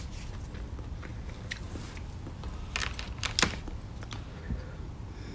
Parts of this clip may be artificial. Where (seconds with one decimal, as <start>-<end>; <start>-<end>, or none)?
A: none